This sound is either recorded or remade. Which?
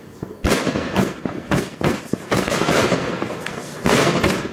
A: remade